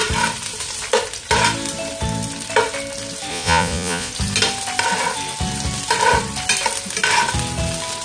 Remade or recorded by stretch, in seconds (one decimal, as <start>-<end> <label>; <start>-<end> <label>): 0.0-3.3 recorded; 3.3-4.1 remade; 4.1-8.0 recorded

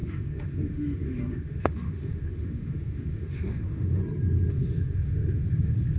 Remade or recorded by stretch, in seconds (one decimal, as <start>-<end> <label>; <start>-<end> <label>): 0.0-4.0 remade; 4.0-4.5 recorded; 4.5-6.0 remade

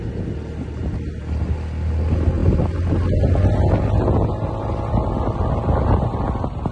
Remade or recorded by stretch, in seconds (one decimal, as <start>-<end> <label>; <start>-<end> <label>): 0.0-6.7 recorded

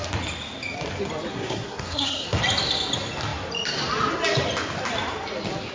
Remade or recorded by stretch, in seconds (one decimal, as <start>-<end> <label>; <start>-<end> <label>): 0.0-1.3 recorded; 1.3-2.4 remade; 2.4-5.7 recorded

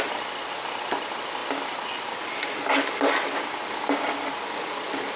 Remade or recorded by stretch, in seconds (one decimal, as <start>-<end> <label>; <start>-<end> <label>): 0.0-5.2 recorded

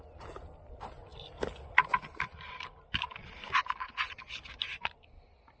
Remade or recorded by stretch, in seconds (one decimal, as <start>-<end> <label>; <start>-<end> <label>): 0.0-5.6 recorded

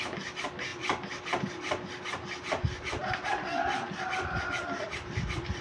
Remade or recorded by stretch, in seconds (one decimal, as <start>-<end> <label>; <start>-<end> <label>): 0.0-0.7 remade; 0.7-1.4 recorded; 1.4-5.6 remade

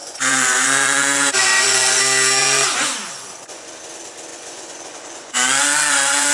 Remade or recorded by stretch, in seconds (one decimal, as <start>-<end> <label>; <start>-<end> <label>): 0.0-2.0 remade; 2.0-2.4 recorded; 2.4-3.7 remade; 3.7-4.3 recorded; 4.3-6.3 remade